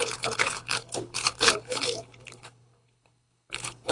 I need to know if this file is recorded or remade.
remade